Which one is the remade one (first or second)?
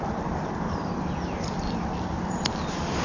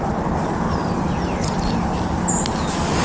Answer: first